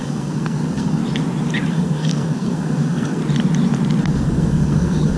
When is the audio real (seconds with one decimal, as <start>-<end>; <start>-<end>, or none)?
1.0-1.7; 3.2-4.0